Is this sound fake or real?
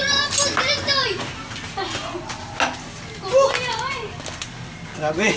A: real